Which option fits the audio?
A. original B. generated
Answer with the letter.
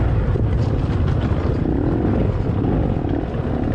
A